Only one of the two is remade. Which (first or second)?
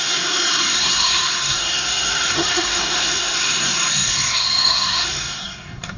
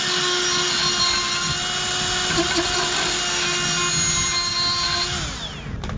first